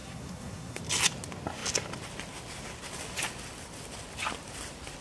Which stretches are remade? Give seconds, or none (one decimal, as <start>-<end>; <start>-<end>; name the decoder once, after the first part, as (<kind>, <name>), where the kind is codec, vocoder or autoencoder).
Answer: 0.0-0.8 (codec, SNAC)